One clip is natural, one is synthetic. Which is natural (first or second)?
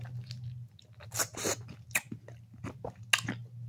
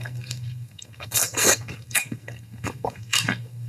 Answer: first